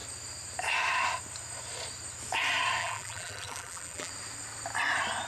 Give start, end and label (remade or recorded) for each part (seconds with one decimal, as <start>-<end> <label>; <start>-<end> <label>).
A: 0.0-2.8 recorded; 2.8-4.1 remade; 4.1-5.3 recorded